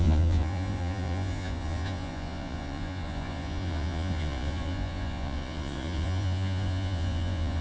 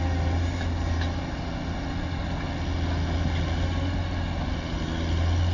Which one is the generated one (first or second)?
first